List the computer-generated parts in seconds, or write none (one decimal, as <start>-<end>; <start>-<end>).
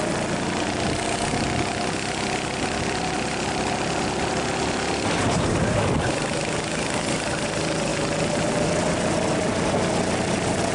none